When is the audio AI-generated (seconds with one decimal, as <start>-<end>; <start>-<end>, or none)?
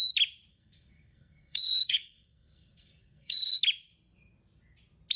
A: 0.5-3.6